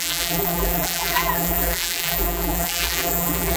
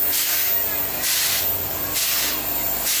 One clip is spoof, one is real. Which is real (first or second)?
second